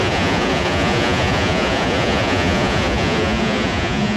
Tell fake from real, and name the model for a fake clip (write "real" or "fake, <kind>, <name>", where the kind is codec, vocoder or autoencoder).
fake, vocoder, Vocos